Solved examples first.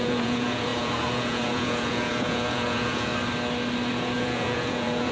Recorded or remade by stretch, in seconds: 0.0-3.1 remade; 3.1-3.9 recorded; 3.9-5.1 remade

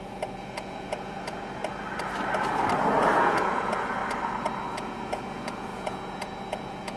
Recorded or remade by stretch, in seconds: 0.0-1.6 remade; 1.6-3.0 recorded; 3.0-4.0 remade; 4.0-4.7 recorded; 4.7-7.0 remade

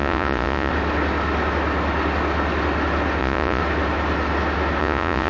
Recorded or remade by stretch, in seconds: 0.0-0.7 remade; 0.7-3.2 recorded; 3.2-3.6 remade; 3.6-4.8 recorded; 4.8-5.3 remade

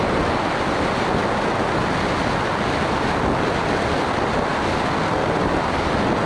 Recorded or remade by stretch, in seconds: 0.0-6.3 recorded

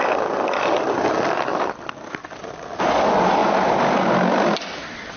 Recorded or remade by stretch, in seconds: 0.0-5.2 recorded